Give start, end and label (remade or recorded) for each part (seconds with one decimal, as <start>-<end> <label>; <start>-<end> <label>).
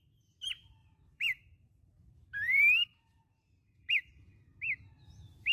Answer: 0.0-0.8 recorded; 0.8-4.1 remade; 4.1-5.5 recorded